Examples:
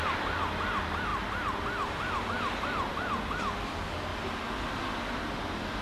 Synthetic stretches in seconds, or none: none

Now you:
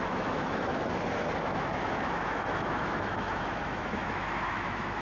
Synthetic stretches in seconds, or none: 0.0-0.7; 1.4-5.0

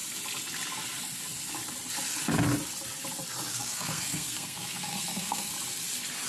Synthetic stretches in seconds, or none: 3.5-5.5

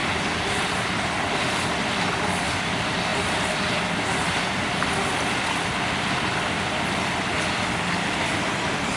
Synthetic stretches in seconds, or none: 0.0-0.9; 3.1-4.8

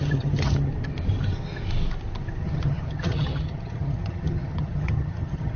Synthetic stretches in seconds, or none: 0.0-0.7; 2.4-5.6